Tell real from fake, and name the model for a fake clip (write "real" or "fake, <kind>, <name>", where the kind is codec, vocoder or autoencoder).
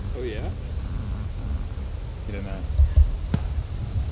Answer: real